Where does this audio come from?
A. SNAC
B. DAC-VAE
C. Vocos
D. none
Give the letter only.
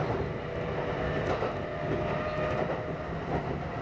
D